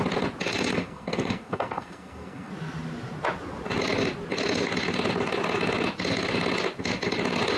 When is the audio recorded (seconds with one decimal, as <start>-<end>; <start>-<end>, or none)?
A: 0.0-0.7; 2.5-7.6